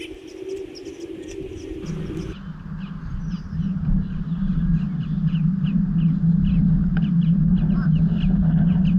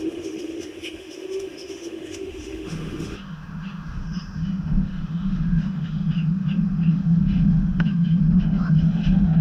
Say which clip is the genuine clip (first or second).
first